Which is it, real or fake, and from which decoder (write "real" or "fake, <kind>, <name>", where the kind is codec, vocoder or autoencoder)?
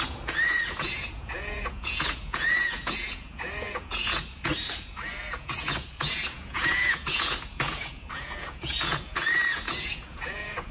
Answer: fake, vocoder, Vocos